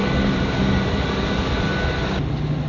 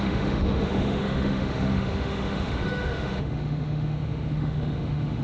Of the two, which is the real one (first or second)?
first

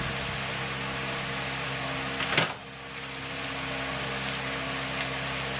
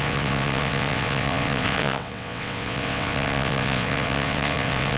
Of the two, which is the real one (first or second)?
first